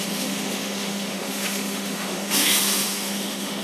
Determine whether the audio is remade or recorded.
remade